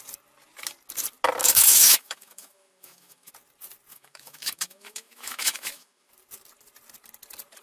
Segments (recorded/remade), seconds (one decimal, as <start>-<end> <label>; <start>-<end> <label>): 0.0-1.4 recorded; 1.4-3.3 remade; 3.3-3.9 recorded; 3.9-6.1 remade; 6.1-7.6 recorded

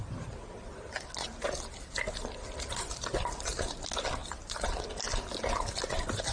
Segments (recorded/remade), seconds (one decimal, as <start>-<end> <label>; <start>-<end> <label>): 0.0-6.3 recorded

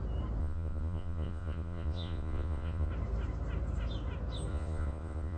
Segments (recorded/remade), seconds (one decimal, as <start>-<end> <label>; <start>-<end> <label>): 0.0-0.4 recorded; 0.4-2.9 remade; 2.9-4.5 recorded; 4.5-5.4 remade